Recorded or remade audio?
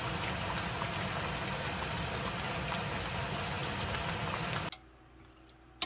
recorded